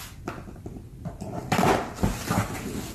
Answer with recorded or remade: recorded